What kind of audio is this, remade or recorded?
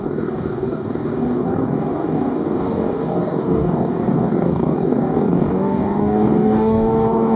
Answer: remade